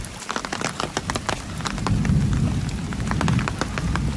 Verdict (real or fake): real